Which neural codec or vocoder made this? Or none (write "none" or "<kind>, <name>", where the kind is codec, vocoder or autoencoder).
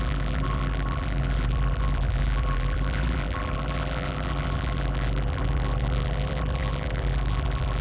vocoder, BigVGAN v2